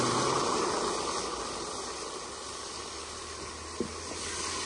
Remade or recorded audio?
recorded